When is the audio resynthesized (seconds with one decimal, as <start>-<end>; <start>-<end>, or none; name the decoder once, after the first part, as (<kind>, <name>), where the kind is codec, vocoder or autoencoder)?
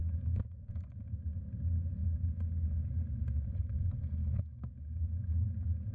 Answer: 0.0-1.0 (autoencoder, DAC-VAE); 2.0-3.8; 4.2-5.5